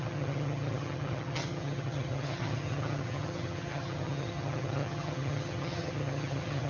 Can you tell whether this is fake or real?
fake